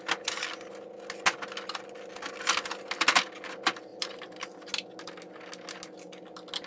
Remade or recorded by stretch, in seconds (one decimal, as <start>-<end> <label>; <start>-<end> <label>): 0.0-3.9 recorded; 3.9-4.7 remade; 4.7-6.7 recorded